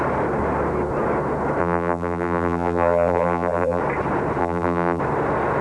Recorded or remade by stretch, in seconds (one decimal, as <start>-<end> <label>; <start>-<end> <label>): 0.0-1.6 recorded; 1.6-3.8 remade; 3.8-4.4 recorded; 4.4-5.0 remade; 5.0-5.6 recorded